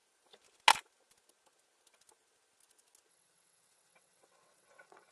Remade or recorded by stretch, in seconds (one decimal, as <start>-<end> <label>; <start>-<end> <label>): 0.0-3.1 recorded; 3.1-5.1 remade